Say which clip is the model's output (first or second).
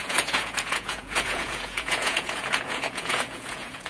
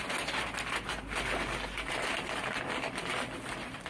first